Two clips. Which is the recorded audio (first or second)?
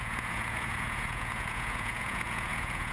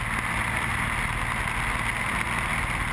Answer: second